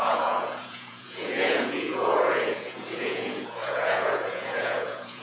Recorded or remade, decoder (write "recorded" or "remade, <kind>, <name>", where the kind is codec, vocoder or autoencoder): remade, vocoder, Vocos